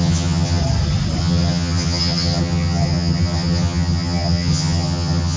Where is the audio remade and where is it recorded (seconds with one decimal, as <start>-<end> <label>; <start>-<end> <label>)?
0.0-0.6 remade; 0.6-1.2 recorded; 1.2-5.4 remade